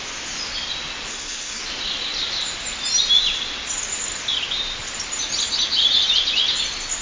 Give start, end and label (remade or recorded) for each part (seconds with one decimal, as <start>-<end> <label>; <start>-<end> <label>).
0.0-1.1 recorded; 1.1-1.6 remade; 1.6-7.0 recorded